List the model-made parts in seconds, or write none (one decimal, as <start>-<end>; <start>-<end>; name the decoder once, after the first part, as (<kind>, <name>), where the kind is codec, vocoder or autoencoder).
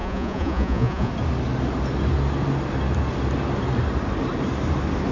0.0-1.1 (vocoder, Vocos)